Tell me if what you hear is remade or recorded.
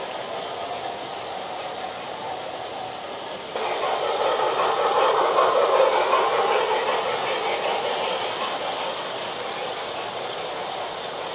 recorded